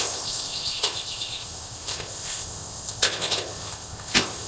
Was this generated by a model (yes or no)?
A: yes